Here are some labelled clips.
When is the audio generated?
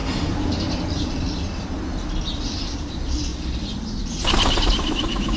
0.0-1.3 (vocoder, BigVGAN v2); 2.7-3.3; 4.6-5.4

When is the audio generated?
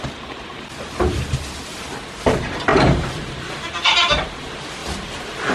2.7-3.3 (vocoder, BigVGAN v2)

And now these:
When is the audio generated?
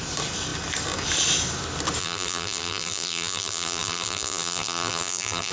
2.0-5.5 (vocoder, BigVGAN v2)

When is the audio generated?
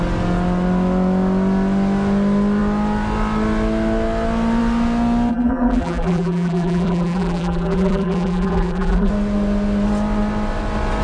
5.3-9.1 (vocoder, BigVGAN v2)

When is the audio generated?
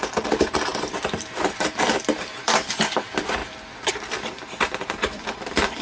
0.0-3.4 (vocoder, BigVGAN v2); 3.9-5.8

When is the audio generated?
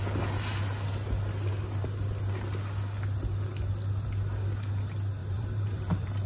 5.2-6.3 (vocoder, BigVGAN v2)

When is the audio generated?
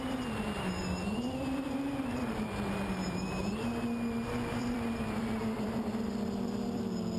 1.1-2.3 (vocoder, BigVGAN v2); 4.6-6.8